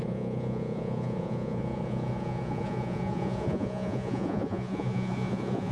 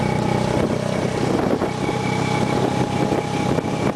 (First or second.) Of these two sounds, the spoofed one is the first